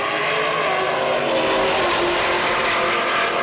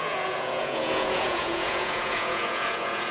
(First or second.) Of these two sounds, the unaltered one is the first